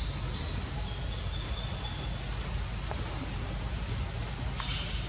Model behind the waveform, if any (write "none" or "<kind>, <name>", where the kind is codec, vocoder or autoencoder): none